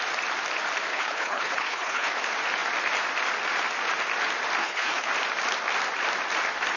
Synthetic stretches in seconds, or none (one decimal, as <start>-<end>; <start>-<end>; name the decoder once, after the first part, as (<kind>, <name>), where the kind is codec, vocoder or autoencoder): 0.9-2.1 (codec, HILCodec); 4.6-5.1